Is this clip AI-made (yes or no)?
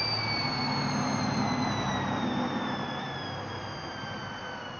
no